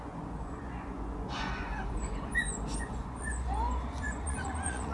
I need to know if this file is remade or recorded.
remade